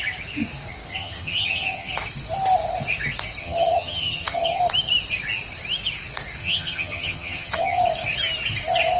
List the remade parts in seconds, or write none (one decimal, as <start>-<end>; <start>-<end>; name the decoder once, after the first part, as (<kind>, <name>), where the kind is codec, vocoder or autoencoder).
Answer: 0.9-1.9 (vocoder, HiFi-GAN); 3.4-4.6; 6.4-7.8